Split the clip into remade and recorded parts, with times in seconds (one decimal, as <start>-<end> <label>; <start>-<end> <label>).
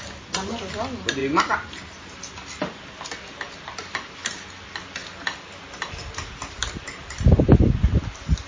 0.0-8.5 recorded